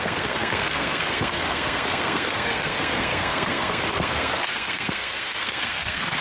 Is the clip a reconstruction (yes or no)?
yes